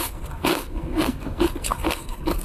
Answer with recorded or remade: remade